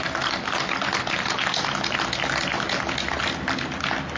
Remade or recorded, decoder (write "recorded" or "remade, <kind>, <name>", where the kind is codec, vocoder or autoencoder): recorded